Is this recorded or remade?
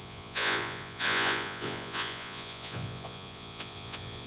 remade